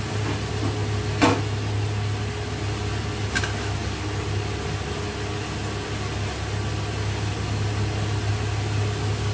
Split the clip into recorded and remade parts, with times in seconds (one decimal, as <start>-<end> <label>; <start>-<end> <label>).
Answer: 0.0-9.3 recorded